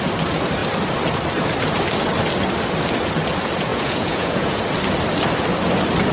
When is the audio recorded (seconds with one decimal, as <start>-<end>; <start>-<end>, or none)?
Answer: 0.0-3.7; 4.6-6.1